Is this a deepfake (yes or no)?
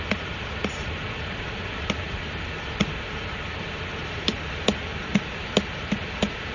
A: yes